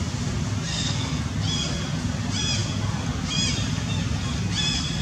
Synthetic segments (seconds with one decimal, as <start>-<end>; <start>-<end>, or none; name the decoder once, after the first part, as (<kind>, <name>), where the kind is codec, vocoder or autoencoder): 0.7-1.2 (codec, SNAC)